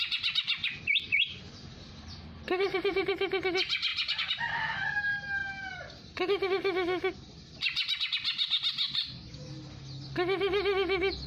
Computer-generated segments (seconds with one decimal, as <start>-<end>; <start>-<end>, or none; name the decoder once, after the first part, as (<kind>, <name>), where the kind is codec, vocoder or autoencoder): 1.1-3.1 (vocoder, BigVGAN v2)